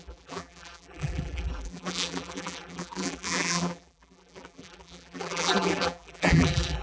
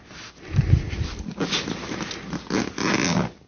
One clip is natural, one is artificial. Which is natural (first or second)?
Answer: second